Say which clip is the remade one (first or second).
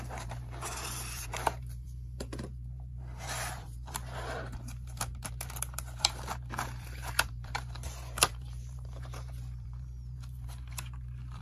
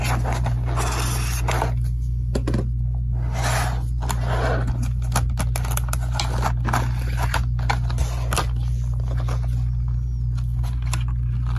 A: first